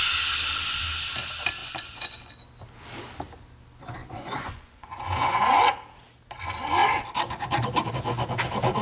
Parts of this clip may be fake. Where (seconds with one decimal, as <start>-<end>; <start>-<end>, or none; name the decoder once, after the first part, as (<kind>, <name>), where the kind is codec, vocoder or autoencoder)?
1.6-2.3 (vocoder, Vocos); 4.0-5.6